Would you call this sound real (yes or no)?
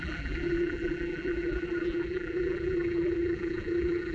no